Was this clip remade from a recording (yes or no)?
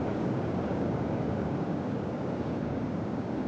yes